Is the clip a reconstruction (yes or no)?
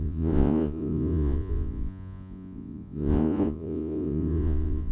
yes